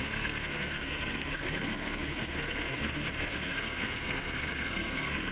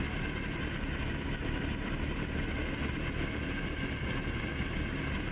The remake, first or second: first